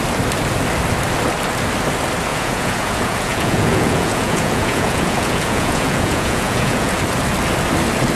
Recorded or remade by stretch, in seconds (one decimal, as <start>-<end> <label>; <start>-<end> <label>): 0.0-2.3 recorded; 2.3-7.0 remade; 7.0-8.2 recorded